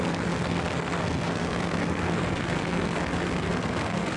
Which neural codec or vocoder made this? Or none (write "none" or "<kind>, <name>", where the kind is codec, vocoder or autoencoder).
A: codec, SNAC